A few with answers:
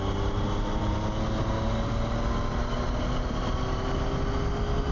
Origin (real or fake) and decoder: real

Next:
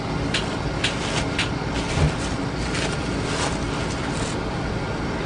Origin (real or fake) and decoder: real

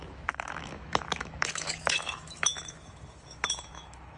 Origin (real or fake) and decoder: fake, autoencoder, DAC-VAE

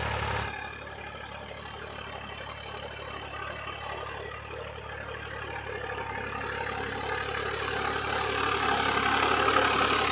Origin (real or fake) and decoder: real